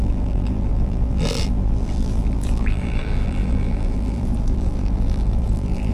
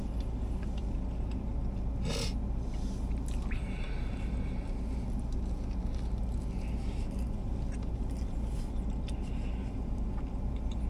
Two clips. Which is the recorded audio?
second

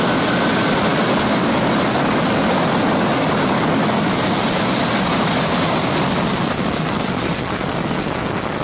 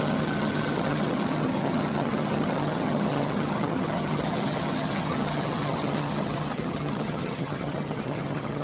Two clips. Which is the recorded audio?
first